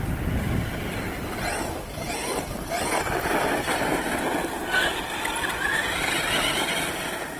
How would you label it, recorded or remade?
recorded